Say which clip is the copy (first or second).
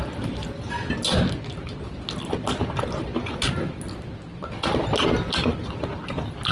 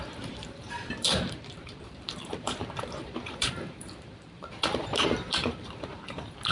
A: second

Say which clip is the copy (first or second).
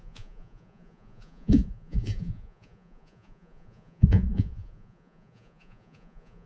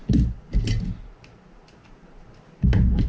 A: first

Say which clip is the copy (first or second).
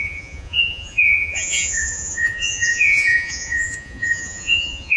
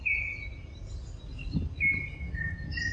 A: first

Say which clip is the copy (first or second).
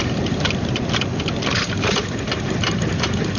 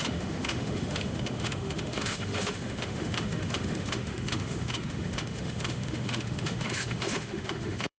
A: second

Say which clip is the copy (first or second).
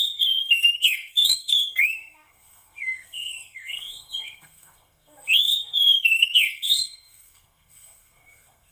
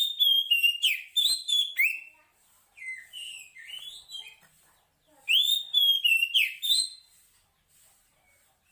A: first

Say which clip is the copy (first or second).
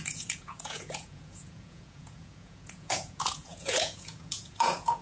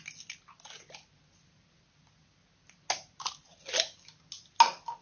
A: first